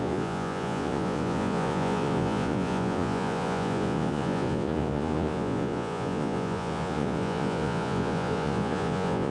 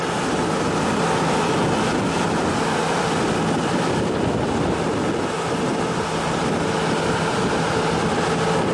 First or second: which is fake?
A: first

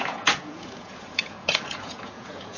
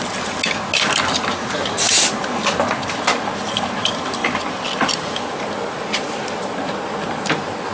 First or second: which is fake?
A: first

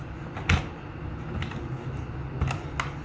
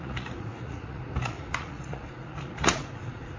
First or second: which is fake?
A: second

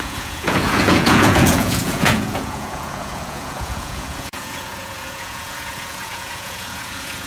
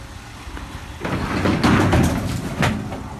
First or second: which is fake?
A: first